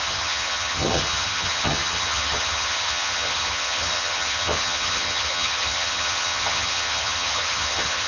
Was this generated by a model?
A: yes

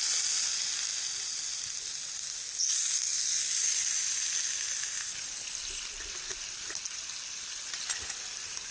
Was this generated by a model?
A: no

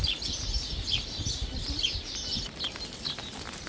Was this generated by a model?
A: no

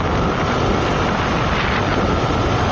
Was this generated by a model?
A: no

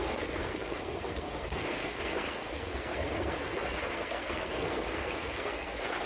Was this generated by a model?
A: yes